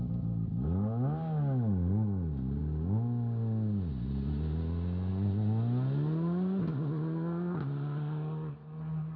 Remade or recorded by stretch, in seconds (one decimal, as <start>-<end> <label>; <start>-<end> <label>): 0.0-9.2 recorded